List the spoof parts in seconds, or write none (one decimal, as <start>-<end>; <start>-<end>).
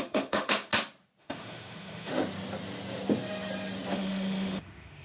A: 0.0-0.7; 1.2-2.1; 3.9-5.0